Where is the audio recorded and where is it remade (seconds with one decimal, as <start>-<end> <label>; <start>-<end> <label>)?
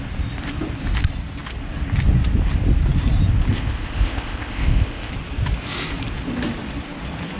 0.0-3.5 recorded; 3.5-5.1 remade; 5.1-7.4 recorded